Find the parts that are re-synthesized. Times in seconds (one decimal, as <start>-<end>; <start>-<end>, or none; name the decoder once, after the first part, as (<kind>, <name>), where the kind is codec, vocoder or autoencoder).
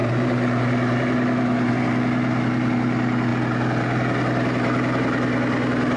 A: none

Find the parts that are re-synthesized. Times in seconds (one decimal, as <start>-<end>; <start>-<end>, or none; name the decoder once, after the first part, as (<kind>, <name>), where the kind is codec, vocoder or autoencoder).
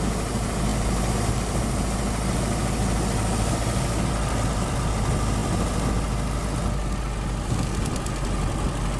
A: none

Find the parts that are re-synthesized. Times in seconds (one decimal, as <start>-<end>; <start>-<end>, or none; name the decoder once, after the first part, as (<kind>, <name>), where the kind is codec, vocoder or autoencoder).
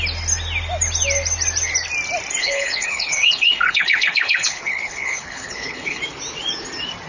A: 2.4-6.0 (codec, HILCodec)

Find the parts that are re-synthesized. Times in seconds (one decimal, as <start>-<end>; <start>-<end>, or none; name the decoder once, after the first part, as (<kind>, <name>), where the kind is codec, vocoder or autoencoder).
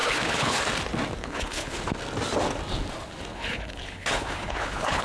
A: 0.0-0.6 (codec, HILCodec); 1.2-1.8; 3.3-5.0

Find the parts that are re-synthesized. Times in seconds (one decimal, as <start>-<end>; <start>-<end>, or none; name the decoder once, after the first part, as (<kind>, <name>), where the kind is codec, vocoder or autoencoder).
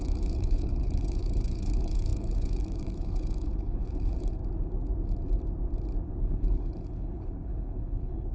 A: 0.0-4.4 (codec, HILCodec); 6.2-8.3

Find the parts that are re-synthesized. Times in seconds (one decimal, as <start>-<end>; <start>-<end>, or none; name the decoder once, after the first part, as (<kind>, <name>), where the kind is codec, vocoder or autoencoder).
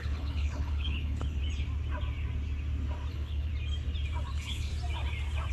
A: 0.0-1.4 (codec, HILCodec); 3.1-3.5; 4.3-4.7